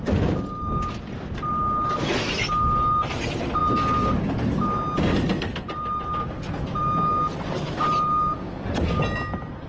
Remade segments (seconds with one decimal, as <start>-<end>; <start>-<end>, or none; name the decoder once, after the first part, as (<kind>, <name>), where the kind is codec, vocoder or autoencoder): none